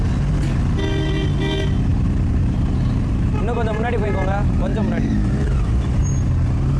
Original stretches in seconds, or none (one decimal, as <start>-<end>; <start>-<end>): 0.0-1.9; 6.0-6.8

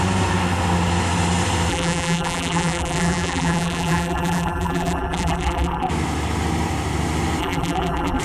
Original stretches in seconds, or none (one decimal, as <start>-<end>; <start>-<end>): 0.0-1.7; 5.9-7.4

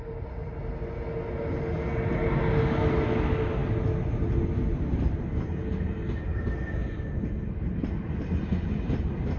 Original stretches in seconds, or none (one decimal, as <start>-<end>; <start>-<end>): 0.0-9.4

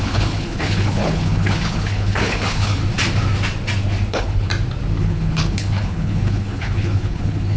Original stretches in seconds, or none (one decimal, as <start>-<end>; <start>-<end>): 2.8-4.1; 4.5-5.0

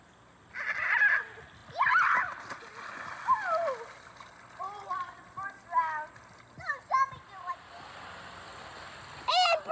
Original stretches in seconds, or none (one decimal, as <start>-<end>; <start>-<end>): 0.0-9.7

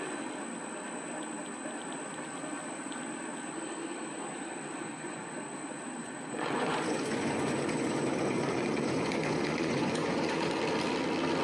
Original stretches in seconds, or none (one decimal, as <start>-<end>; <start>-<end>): 0.0-4.8; 5.3-6.0; 10.5-11.4